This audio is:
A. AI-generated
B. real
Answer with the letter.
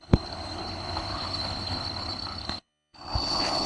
A